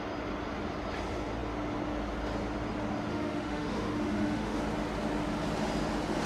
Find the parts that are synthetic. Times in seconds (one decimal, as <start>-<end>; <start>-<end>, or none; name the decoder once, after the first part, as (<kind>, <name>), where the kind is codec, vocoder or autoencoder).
3.1-4.6 (autoencoder, DAC-VAE)